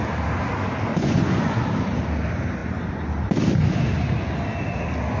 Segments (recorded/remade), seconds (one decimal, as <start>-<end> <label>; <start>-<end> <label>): 0.0-0.9 recorded; 0.9-1.6 remade; 1.6-5.2 recorded